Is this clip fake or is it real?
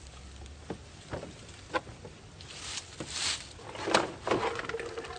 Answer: real